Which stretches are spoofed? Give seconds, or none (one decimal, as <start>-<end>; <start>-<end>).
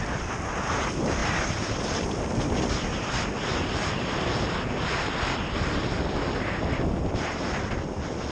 1.2-2.2